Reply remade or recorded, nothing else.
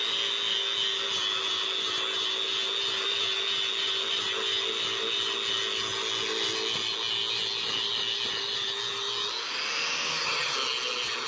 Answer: recorded